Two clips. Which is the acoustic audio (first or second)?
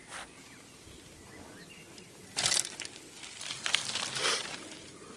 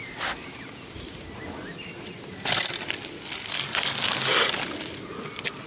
second